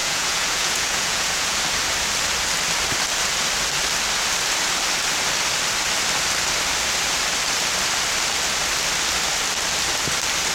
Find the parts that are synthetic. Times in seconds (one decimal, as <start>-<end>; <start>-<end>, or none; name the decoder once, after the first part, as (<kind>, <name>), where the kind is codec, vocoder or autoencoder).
0.0-1.6 (vocoder, Vocos)